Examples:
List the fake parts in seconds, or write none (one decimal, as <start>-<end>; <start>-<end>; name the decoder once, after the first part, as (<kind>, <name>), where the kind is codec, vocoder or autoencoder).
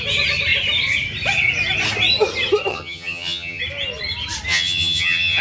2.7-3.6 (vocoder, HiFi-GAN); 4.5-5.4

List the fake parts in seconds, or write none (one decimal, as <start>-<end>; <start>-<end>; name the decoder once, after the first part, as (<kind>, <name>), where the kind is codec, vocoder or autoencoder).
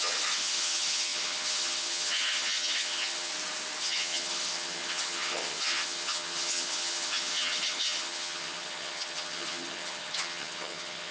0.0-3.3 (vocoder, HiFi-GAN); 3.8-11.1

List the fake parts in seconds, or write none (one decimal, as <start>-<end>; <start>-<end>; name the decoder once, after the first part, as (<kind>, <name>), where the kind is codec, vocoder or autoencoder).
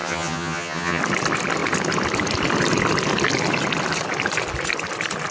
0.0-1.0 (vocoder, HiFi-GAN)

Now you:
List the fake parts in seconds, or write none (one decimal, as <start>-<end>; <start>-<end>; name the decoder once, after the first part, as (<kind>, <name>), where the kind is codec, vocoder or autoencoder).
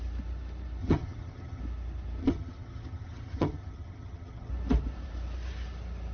0.8-1.6 (vocoder, HiFi-GAN); 2.2-4.5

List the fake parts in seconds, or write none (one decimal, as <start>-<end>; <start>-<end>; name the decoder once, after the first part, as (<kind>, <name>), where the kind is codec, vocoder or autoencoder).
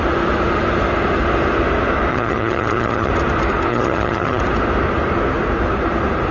2.1-3.1 (vocoder, HiFi-GAN); 3.7-4.4